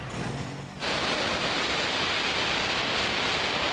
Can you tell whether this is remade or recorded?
recorded